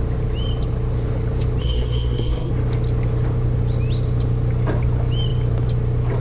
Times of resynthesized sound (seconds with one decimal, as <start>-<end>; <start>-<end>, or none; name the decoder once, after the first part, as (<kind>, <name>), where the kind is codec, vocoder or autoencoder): 1.6-2.5 (codec, SNAC)